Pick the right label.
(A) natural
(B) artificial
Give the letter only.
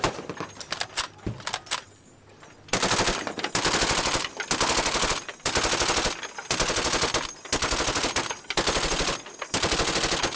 A